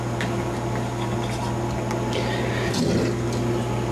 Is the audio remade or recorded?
recorded